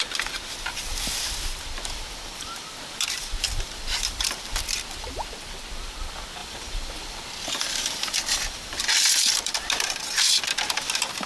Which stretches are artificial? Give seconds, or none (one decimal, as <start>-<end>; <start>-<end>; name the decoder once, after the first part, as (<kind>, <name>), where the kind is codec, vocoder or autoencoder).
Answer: 0.9-5.6 (vocoder, BigVGAN v2); 6.4-10.2